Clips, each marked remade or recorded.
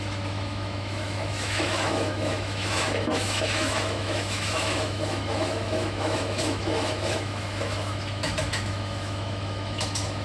remade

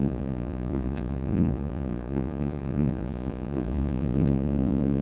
remade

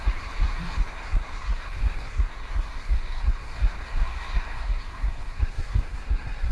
remade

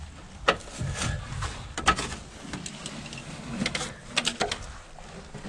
recorded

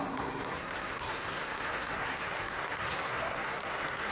remade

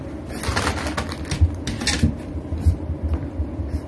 recorded